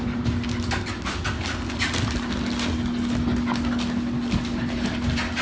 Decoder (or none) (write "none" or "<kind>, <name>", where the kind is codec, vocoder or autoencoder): none